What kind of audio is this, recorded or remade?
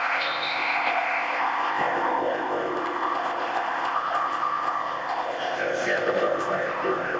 remade